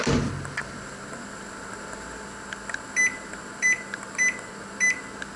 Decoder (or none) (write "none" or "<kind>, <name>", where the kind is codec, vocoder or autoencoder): none